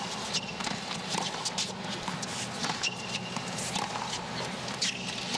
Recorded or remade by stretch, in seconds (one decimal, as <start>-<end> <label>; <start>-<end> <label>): 0.0-2.6 recorded; 2.6-3.7 remade; 3.7-5.4 recorded

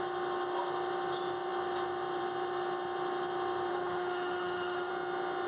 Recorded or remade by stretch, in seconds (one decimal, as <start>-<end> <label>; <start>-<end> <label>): 0.0-3.7 recorded; 3.7-4.9 remade; 4.9-5.5 recorded

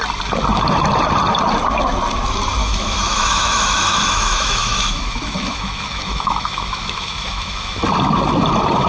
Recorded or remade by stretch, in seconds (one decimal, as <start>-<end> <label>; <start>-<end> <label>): 0.0-2.6 recorded; 2.6-7.8 remade; 7.8-8.9 recorded

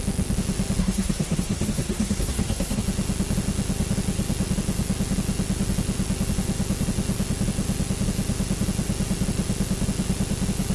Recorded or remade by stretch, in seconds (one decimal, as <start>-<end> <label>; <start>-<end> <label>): 0.0-0.8 recorded; 0.8-2.8 remade; 2.8-10.7 recorded

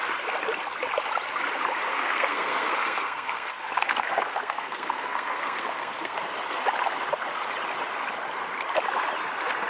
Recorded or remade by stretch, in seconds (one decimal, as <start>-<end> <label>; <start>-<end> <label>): 0.0-1.9 recorded; 1.9-6.2 remade; 6.2-9.7 recorded

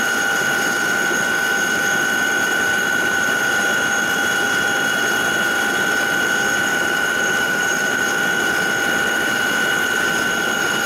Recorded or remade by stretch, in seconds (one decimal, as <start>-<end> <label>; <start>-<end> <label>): 0.0-2.5 recorded; 2.5-3.4 remade; 3.4-6.7 recorded; 6.7-8.1 remade; 8.1-10.9 recorded

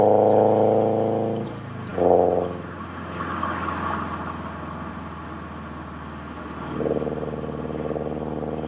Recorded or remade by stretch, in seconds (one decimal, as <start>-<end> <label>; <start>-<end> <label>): 0.0-8.7 recorded

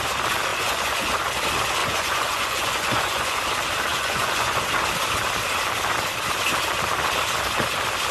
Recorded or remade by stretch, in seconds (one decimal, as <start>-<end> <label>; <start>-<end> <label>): 0.0-0.5 recorded; 0.5-1.1 remade; 1.1-1.8 recorded; 1.8-3.4 remade; 3.4-3.9 recorded; 3.9-4.6 remade; 4.6-8.1 recorded